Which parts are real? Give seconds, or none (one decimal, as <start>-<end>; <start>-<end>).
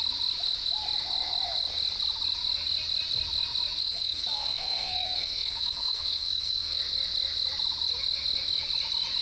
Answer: 0.0-3.8; 6.8-9.2